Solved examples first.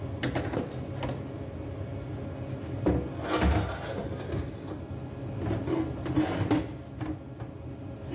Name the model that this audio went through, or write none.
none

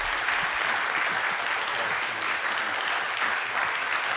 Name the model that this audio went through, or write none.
none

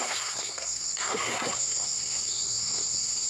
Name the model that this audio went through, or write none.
codec, SNAC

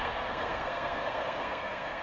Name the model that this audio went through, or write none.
codec, SNAC